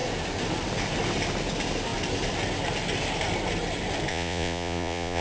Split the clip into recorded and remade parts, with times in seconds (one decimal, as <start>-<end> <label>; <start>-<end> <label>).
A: 0.0-4.1 recorded; 4.1-5.2 remade